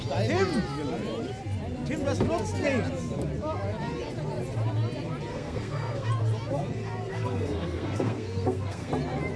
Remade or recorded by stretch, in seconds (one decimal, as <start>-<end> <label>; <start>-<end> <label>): 0.0-5.3 recorded; 5.3-6.1 remade; 6.1-7.1 recorded; 7.1-8.9 remade; 8.9-9.4 recorded